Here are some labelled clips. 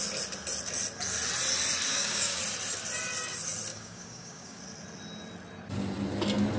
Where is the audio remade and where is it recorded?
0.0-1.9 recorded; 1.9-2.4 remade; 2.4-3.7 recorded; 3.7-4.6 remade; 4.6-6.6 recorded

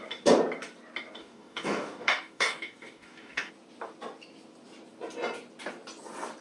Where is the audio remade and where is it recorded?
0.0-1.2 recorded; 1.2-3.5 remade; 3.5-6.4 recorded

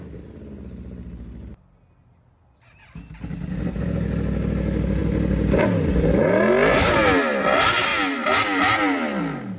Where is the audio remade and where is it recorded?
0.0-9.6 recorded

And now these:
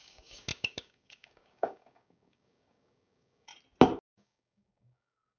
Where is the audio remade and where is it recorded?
0.0-3.5 remade; 3.5-4.1 recorded; 4.1-5.4 remade

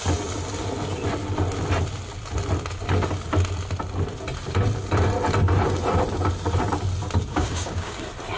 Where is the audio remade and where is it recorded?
0.0-7.3 recorded; 7.3-8.0 remade; 8.0-8.4 recorded

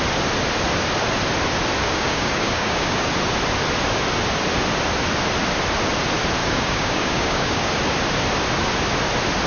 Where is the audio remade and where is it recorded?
0.0-1.8 recorded; 1.8-3.1 remade; 3.1-6.4 recorded; 6.4-7.7 remade; 7.7-9.5 recorded

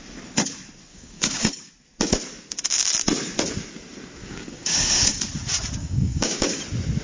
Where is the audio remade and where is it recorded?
0.0-0.9 recorded; 0.9-1.7 remade; 1.7-4.2 recorded; 4.2-5.2 remade; 5.2-5.8 recorded; 5.8-6.6 remade; 6.6-7.0 recorded

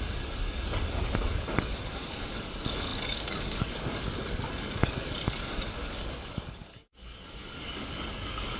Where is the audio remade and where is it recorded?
0.0-8.6 remade